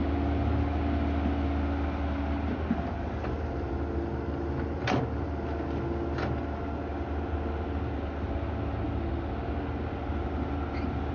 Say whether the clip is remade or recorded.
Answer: recorded